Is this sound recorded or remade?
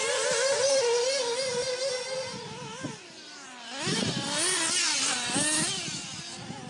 recorded